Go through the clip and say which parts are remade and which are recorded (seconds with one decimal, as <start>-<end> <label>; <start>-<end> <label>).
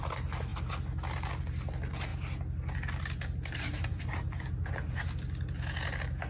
0.0-6.3 recorded